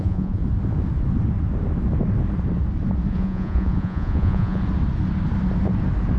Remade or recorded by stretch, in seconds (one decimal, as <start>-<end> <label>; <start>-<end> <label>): 0.0-0.4 remade; 0.4-3.1 recorded; 3.1-4.6 remade; 4.6-6.2 recorded